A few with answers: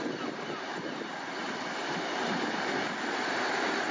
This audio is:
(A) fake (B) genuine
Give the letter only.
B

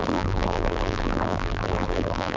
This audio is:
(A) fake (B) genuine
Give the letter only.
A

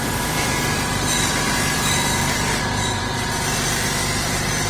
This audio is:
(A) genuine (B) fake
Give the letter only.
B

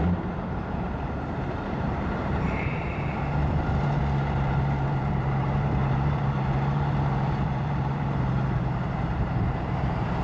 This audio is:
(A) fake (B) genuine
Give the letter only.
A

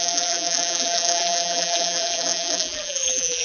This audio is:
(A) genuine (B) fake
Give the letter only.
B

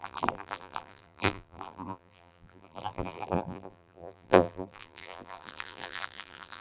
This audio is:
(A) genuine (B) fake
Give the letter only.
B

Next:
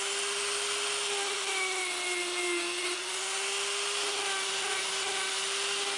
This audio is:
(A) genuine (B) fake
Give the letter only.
A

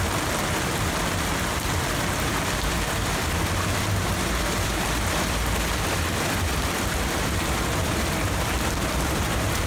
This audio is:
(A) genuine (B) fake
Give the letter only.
B